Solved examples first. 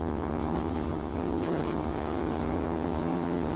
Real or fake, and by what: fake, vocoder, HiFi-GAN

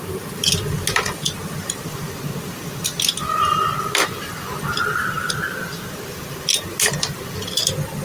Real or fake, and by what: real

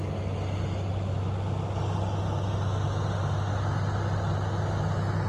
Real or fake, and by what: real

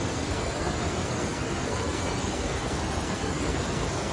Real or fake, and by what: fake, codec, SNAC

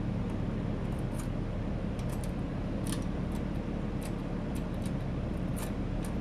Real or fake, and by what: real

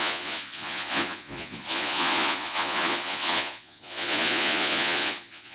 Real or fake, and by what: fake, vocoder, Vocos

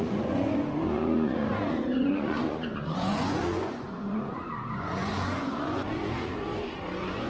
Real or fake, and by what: fake, vocoder, Vocos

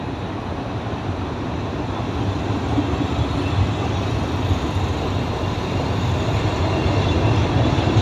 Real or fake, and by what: real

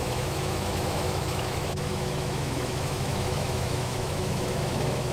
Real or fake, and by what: fake, autoencoder, DAC-VAE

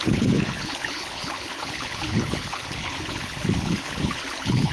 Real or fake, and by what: fake, codec, HILCodec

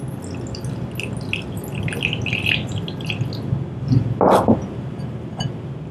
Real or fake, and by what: real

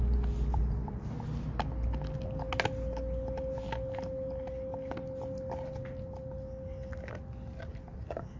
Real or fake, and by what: real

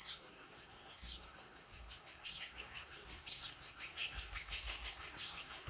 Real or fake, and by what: fake, codec, SNAC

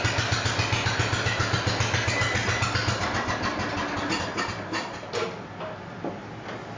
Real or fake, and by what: real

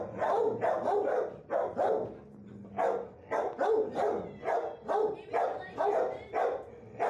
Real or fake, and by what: real